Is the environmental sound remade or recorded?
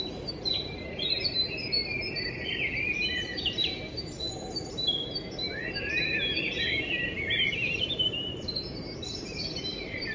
remade